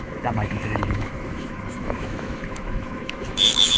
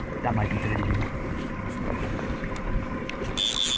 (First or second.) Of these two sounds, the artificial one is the first